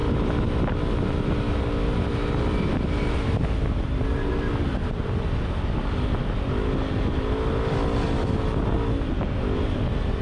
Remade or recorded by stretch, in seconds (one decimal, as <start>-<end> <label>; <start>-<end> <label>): 0.0-10.2 recorded